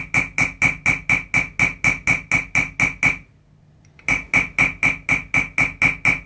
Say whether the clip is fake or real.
real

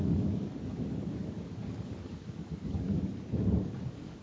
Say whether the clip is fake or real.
fake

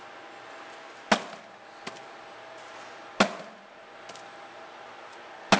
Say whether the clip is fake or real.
real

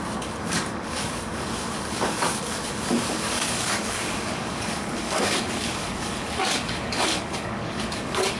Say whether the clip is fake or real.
fake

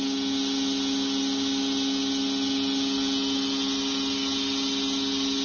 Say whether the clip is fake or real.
real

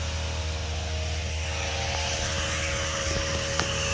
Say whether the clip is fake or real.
real